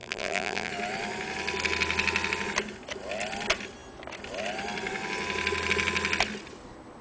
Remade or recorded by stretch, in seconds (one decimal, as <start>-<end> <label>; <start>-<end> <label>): 0.0-0.7 remade; 0.7-7.0 recorded